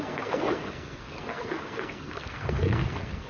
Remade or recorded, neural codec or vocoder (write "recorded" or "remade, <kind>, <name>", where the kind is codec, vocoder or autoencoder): remade, codec, SNAC